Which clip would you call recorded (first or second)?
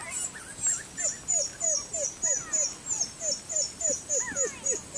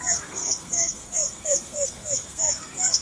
first